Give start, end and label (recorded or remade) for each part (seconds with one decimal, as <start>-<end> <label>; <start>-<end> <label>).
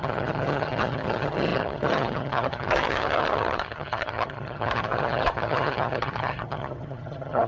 0.0-7.5 remade